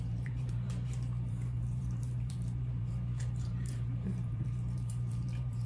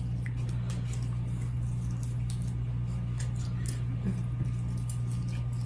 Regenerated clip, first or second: first